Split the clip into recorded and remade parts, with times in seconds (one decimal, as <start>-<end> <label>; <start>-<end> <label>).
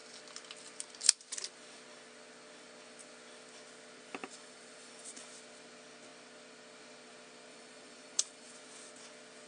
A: 0.0-4.2 recorded; 4.2-5.3 remade; 5.3-7.5 recorded; 7.5-8.6 remade; 8.6-9.5 recorded